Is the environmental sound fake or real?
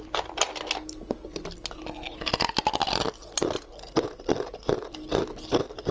real